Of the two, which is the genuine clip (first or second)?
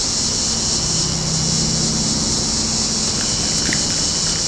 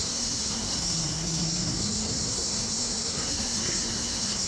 first